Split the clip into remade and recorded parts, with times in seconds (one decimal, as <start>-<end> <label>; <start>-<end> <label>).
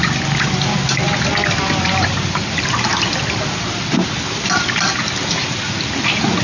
0.0-6.4 recorded